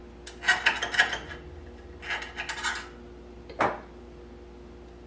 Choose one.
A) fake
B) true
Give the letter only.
B